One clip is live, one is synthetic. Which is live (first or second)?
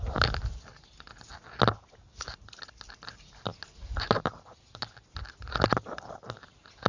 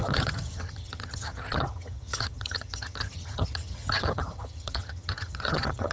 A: first